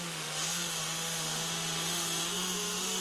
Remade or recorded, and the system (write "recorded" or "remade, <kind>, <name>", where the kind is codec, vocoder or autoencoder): remade, autoencoder, DAC-VAE